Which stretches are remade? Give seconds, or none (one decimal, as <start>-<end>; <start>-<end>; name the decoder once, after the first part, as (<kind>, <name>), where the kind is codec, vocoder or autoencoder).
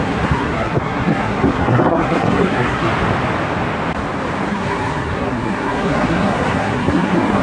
0.0-2.9 (codec, SNAC); 4.5-7.4